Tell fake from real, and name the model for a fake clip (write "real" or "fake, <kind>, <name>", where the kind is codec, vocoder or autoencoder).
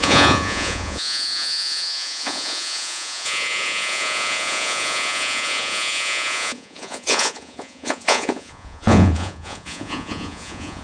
fake, vocoder, Vocos